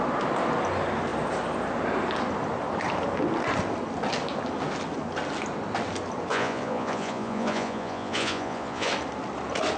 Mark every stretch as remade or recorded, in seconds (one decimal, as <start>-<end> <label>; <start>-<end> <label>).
0.0-6.3 recorded; 6.3-8.9 remade; 8.9-9.8 recorded